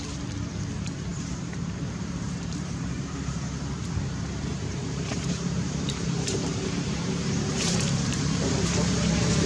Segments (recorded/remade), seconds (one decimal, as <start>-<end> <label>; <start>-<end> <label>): 0.0-1.1 recorded; 1.1-3.4 remade; 3.4-4.5 recorded; 4.5-9.5 remade